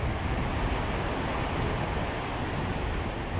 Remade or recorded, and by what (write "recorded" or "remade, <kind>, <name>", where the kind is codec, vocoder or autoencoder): recorded